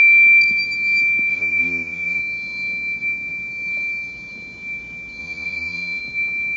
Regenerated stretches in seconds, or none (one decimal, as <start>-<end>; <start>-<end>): 1.3-2.2; 5.2-6.0